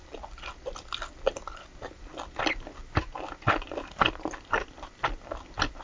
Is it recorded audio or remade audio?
recorded